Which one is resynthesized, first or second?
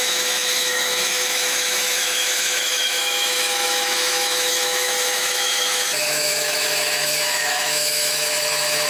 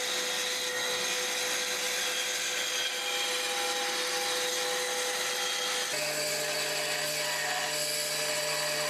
first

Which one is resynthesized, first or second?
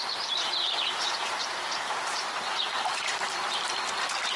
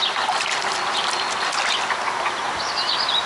first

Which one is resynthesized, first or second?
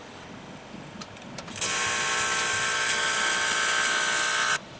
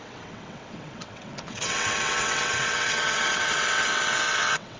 second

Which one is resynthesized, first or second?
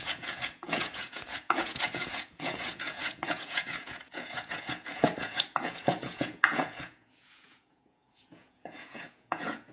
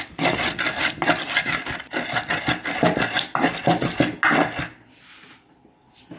first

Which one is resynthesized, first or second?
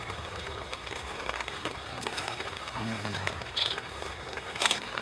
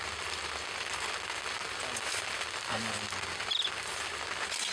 first